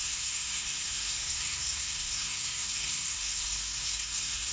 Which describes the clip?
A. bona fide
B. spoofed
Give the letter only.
B